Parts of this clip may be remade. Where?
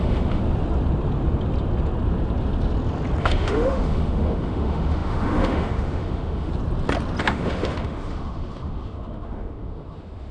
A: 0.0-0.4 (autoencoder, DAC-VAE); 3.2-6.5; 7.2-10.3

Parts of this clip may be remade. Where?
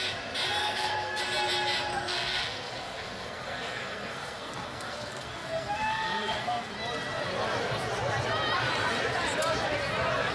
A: 0.6-1.2 (codec, SNAC); 1.9-6.7